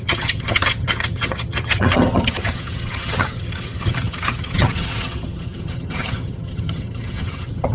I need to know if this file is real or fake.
fake